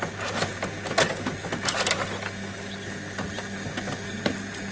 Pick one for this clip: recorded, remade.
recorded